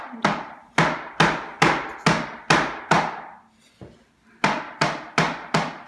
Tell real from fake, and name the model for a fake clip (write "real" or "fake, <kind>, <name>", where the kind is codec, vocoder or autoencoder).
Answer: real